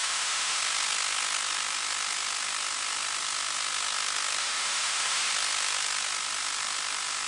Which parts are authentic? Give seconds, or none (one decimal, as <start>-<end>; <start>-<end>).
0.6-4.4; 5.3-7.3